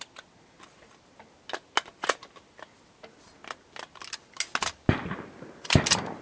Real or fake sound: real